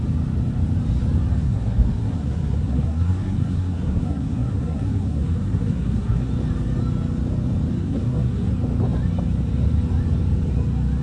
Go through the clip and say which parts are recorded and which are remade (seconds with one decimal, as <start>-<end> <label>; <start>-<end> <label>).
0.0-1.4 recorded; 1.4-6.3 remade; 6.3-7.7 recorded; 7.7-8.5 remade; 8.5-11.0 recorded